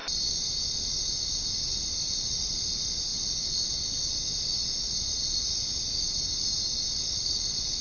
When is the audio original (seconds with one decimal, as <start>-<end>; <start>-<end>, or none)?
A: 0.0-1.1; 3.1-4.0